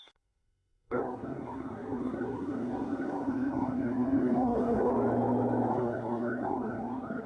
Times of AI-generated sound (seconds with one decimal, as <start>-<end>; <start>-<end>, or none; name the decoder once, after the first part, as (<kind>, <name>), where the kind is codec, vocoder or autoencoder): 0.0-4.9 (codec, SNAC); 5.7-7.3